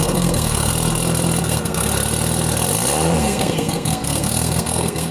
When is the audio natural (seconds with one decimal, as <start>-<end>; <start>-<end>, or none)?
0.7-1.4; 1.9-3.2